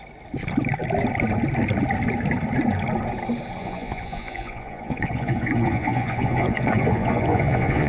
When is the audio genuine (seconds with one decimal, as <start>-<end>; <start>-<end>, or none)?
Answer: 0.0-3.6